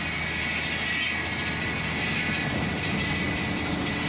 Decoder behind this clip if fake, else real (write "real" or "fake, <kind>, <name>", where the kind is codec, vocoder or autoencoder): real